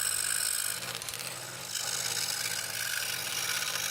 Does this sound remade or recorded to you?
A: recorded